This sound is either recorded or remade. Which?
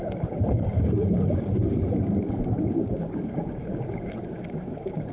remade